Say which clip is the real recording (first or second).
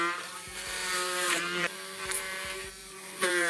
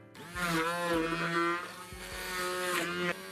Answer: second